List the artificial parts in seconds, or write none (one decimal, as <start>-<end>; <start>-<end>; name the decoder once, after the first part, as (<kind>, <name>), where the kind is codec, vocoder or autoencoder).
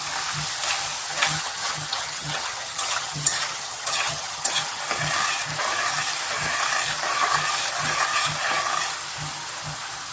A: 1.2-4.8 (vocoder, HiFi-GAN)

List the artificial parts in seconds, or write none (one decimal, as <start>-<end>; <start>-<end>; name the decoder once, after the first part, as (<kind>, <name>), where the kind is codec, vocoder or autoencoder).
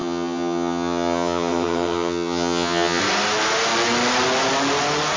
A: 0.0-3.0 (vocoder, HiFi-GAN)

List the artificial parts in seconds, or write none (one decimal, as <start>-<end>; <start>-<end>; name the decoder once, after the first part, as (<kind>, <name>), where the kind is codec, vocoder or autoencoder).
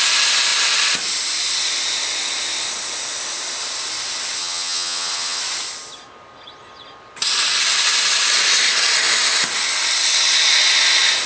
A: 4.4-5.4 (vocoder, HiFi-GAN)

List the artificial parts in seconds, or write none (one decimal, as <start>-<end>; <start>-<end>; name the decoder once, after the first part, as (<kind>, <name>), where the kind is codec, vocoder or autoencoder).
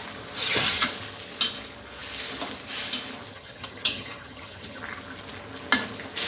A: 0.4-0.9 (vocoder, HiFi-GAN); 3.3-4.8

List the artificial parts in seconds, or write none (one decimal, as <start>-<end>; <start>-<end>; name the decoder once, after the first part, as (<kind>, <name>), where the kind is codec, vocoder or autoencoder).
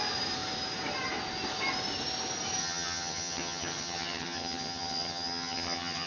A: 2.6-6.1 (vocoder, HiFi-GAN)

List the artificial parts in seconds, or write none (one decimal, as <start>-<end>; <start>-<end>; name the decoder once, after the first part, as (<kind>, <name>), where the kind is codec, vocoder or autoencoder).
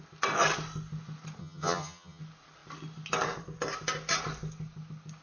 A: 1.4-2.2 (vocoder, HiFi-GAN)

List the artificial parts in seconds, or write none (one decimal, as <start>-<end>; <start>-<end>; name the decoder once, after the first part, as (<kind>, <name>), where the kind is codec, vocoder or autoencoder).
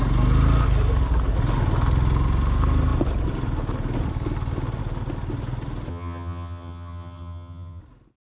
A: 5.9-7.8 (vocoder, HiFi-GAN)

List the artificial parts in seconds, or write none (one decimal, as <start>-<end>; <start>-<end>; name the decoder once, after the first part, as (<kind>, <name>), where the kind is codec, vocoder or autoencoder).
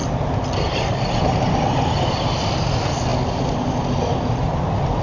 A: none